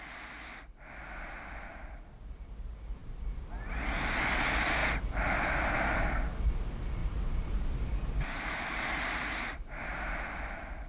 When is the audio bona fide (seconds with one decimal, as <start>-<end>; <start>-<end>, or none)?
0.0-3.0; 3.5-7.0; 10.2-10.9